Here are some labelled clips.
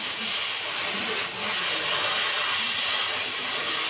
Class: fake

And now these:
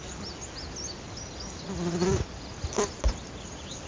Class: real